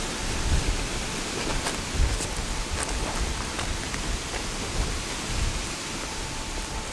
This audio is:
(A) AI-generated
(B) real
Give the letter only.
A